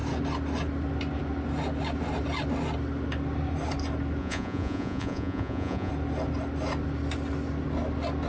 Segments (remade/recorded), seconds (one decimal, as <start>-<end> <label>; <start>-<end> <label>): 0.0-4.2 recorded; 4.2-5.9 remade; 5.9-8.3 recorded